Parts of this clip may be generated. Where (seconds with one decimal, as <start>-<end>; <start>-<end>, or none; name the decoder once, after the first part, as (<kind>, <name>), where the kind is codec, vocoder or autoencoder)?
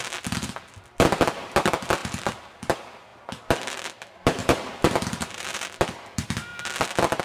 2.0-2.5 (vocoder, BigVGAN v2); 4.4-5.4